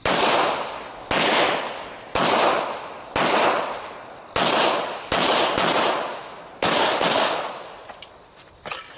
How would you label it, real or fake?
real